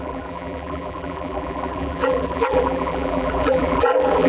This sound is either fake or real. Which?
fake